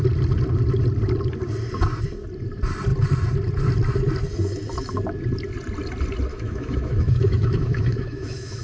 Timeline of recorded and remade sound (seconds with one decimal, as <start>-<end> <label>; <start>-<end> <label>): 0.0-6.3 recorded; 6.3-8.6 remade